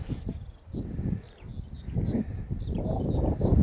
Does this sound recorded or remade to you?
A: recorded